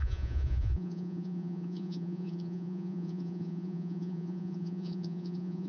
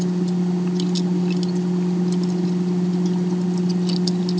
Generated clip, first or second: first